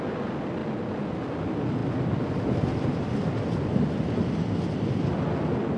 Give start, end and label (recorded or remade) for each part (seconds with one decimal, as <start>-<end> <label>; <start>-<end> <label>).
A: 0.0-1.8 remade; 1.8-2.9 recorded; 2.9-5.8 remade